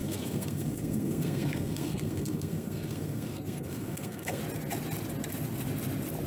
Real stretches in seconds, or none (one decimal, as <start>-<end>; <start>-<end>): 4.4-6.3